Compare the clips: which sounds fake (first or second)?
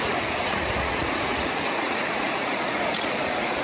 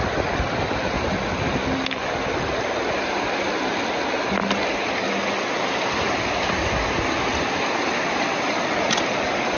first